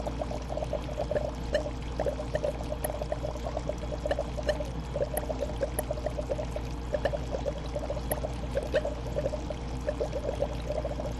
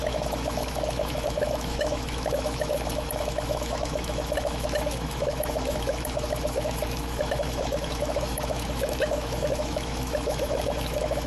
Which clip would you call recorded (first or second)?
first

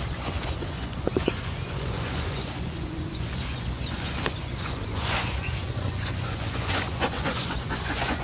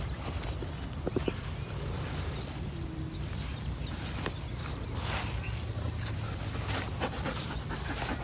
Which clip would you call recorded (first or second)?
second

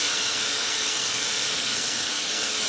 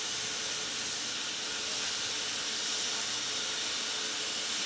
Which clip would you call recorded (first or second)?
second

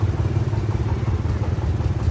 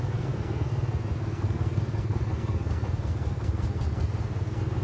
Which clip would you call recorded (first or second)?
first